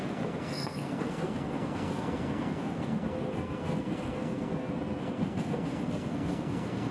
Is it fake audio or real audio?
fake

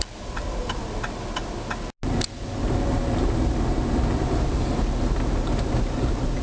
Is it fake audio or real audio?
real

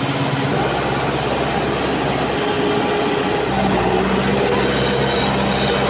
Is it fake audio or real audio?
real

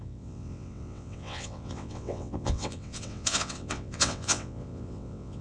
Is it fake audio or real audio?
fake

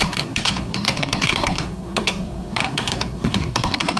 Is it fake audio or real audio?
fake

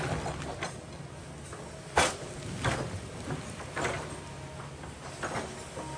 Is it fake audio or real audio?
real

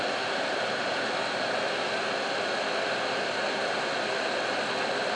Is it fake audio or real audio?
real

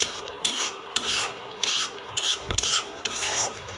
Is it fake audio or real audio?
fake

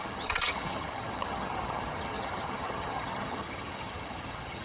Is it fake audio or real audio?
fake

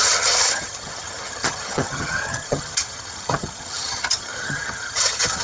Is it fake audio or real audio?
fake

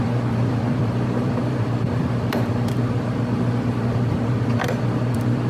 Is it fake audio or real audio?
fake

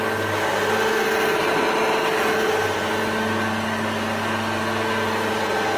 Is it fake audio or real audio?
real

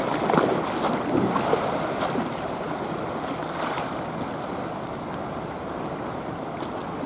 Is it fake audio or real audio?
real